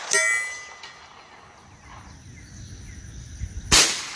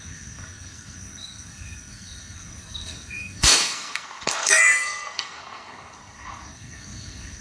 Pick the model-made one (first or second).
second